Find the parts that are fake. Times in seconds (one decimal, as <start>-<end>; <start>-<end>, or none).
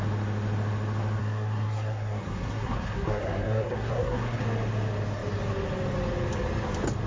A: 1.2-4.4